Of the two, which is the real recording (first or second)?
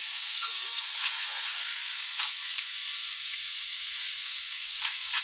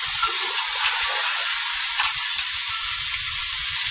second